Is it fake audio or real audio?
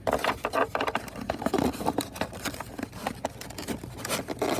real